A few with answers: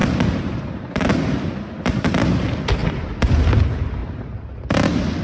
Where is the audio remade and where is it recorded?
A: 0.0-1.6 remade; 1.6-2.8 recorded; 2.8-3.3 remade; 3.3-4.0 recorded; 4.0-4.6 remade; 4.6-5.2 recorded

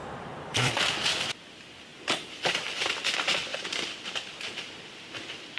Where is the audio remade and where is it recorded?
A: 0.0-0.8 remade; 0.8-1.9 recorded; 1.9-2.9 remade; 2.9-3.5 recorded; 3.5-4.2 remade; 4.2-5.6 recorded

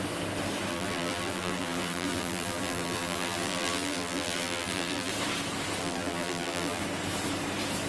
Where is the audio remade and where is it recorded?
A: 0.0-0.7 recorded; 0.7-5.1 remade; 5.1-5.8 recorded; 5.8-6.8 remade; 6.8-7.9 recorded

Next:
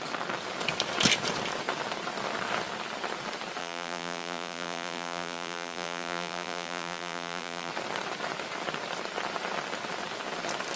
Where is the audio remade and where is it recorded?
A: 0.0-3.6 recorded; 3.6-7.7 remade; 7.7-10.8 recorded

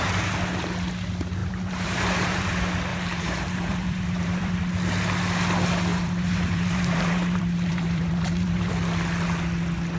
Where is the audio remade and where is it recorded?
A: 0.0-1.4 recorded; 1.4-2.5 remade; 2.5-2.9 recorded; 2.9-4.6 remade; 4.6-5.9 recorded; 5.9-8.7 remade; 8.7-10.0 recorded

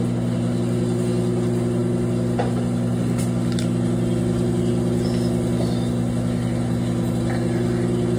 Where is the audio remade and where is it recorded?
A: 0.0-8.2 recorded

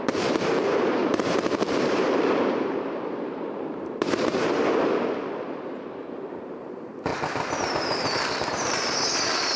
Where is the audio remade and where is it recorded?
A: 0.0-4.6 remade; 4.6-6.5 recorded; 6.5-7.1 remade; 7.1-7.6 recorded; 7.6-9.6 remade

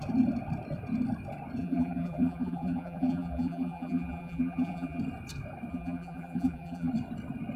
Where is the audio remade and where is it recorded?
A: 0.0-1.6 recorded; 1.6-5.0 remade; 5.0-5.7 recorded; 5.7-6.9 remade; 6.9-7.6 recorded